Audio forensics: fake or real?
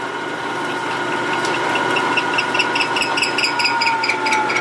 real